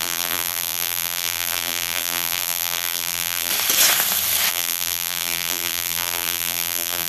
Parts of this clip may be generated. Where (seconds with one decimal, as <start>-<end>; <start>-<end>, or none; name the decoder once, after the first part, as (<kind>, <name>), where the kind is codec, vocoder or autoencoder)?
0.0-3.5 (vocoder, BigVGAN v2); 4.5-7.1